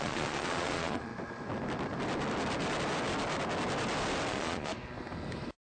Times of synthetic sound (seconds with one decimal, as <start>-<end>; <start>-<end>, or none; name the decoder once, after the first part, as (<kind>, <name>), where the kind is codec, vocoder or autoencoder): 0.0-1.1 (vocoder, Vocos); 4.3-4.7

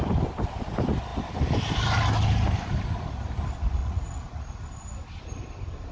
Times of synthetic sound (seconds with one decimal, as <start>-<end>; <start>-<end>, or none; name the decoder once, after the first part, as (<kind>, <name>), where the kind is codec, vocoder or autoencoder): 3.8-4.6 (vocoder, Vocos)

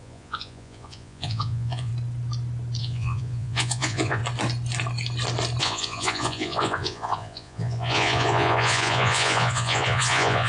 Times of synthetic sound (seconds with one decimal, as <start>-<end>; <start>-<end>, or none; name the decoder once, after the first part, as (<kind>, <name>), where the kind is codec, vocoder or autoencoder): 0.0-1.9 (vocoder, Vocos); 2.8-4.2; 5.6-10.5

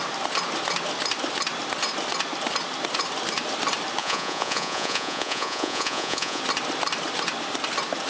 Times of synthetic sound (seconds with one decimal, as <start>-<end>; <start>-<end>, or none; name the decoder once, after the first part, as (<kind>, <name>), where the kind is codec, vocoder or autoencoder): 4.0-6.4 (vocoder, Vocos)

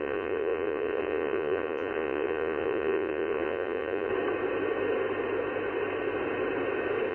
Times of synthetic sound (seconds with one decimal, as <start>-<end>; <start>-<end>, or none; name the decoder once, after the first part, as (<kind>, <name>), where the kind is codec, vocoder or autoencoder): 0.0-4.1 (vocoder, Vocos)

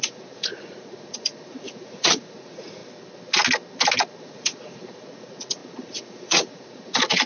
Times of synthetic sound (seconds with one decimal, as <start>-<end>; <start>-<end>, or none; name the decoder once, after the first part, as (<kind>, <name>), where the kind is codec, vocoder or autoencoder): 0.0-2.8 (vocoder, Vocos); 4.2-7.3

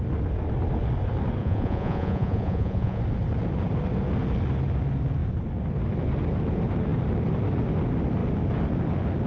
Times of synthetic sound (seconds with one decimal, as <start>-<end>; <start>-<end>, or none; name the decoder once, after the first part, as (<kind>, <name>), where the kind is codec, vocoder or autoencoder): 1.4-3.0 (vocoder, Vocos)

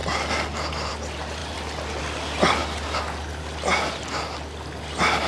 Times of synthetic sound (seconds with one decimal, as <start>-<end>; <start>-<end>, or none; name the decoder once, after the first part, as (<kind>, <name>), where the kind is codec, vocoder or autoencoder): none